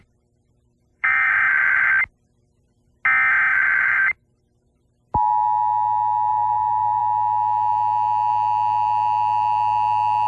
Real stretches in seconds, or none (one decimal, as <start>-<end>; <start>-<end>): 0.0-0.9; 1.9-3.5; 4.9-6.3; 7.0-10.3